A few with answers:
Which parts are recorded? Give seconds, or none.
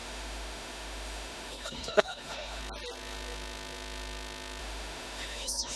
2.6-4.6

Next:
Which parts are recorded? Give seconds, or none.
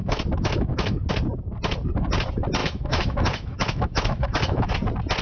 1.1-2.6; 4.7-5.2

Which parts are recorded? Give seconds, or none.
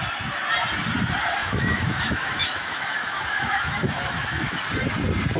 0.0-1.4; 4.6-5.4